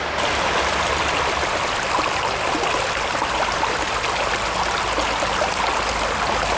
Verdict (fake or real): real